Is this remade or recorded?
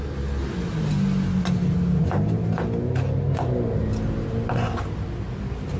recorded